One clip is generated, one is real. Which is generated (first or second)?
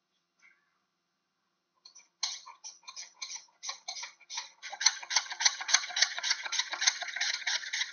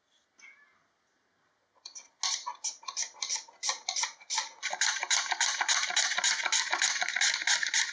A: first